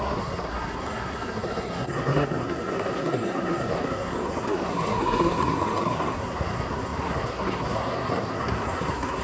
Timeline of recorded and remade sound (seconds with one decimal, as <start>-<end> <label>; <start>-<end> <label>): 0.0-9.2 remade